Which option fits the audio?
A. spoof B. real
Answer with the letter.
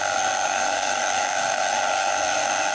A